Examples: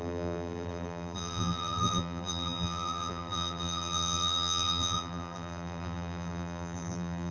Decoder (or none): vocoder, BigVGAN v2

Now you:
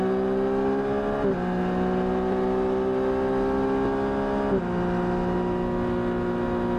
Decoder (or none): none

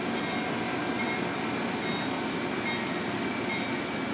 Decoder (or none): none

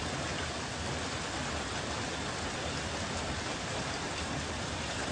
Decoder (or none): none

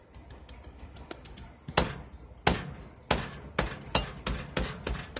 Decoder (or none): none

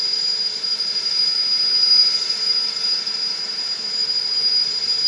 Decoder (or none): vocoder, BigVGAN v2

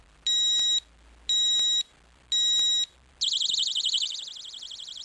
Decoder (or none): none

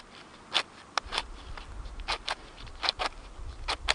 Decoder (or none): none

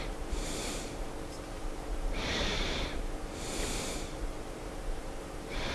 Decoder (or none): vocoder, BigVGAN v2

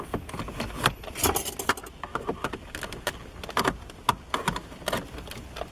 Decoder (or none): none